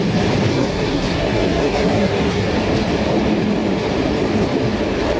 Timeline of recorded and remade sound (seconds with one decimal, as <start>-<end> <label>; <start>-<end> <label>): 0.0-0.5 recorded; 0.5-2.5 remade; 2.5-5.2 recorded